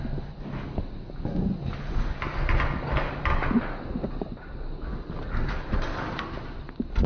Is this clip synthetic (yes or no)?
no